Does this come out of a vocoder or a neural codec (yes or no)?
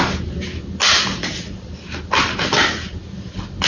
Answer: no